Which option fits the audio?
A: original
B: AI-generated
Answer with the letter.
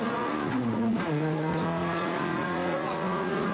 B